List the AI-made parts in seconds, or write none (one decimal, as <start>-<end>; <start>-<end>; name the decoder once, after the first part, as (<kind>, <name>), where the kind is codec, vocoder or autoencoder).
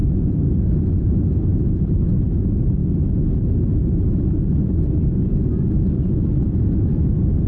none